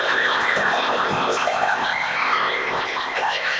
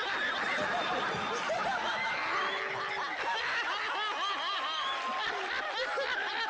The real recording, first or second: second